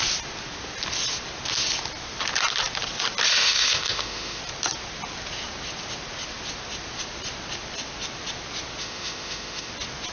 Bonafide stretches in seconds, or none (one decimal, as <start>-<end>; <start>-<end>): 0.0-3.3; 4.4-8.8; 9.7-10.1

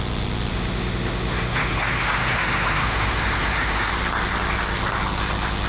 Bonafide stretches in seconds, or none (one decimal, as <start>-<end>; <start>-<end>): 0.0-0.5; 3.9-5.7